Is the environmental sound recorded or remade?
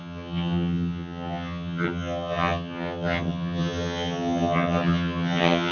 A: remade